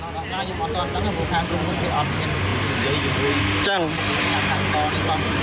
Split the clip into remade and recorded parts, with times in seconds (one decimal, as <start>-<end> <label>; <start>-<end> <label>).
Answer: 0.0-5.4 recorded